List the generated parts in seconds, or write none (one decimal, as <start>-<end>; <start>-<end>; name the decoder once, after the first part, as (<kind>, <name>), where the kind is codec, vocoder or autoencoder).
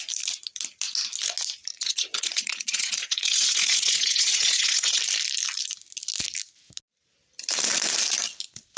1.7-5.0 (vocoder, Vocos)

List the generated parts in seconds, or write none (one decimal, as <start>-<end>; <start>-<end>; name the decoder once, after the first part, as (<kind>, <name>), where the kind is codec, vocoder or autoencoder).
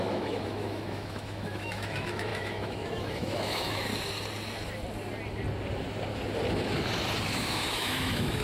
0.0-3.9 (autoencoder, DAC-VAE); 7.3-8.4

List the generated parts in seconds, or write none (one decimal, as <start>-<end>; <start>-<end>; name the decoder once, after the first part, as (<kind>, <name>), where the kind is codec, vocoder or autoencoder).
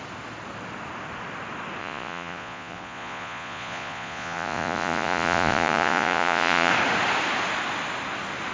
1.8-6.7 (vocoder, Vocos)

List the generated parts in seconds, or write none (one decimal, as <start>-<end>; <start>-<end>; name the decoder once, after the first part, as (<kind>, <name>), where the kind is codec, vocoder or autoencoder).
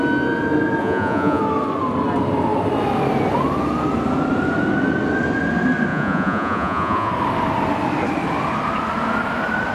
0.8-1.4 (vocoder, Vocos); 5.9-7.1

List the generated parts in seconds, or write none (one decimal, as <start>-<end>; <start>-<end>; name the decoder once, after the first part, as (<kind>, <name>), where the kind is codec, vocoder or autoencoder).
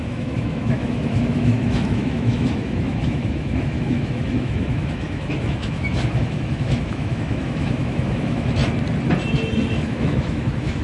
0.0-8.6 (autoencoder, DAC-VAE); 9.7-10.8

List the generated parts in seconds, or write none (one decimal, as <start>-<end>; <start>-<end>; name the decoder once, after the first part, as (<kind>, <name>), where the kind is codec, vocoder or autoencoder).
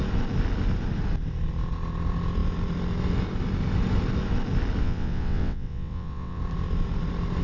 4.8-6.4 (vocoder, WaveNeXt)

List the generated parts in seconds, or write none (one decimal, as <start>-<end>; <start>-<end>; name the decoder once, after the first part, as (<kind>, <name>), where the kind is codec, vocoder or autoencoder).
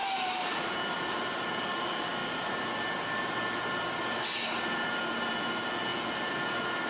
none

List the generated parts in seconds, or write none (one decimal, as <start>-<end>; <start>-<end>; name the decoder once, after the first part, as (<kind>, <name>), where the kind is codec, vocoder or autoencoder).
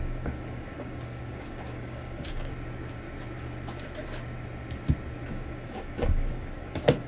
0.0-2.5 (codec, DAC); 5.3-7.1